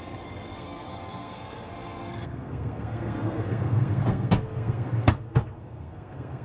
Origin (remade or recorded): remade